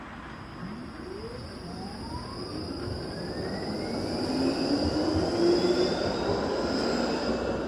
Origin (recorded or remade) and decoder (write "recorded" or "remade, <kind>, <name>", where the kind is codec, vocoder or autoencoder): recorded